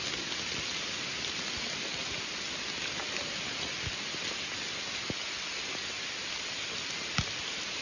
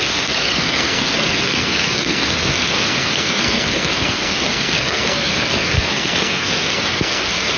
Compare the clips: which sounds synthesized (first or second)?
second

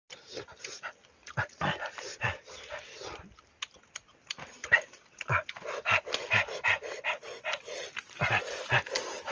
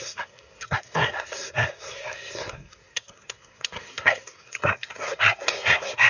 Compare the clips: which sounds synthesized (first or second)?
second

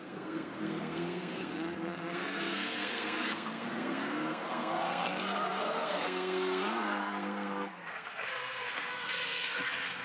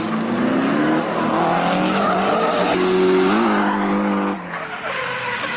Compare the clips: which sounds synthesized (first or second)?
first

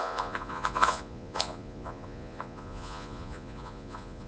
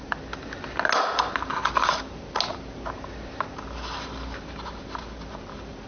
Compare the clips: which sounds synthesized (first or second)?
first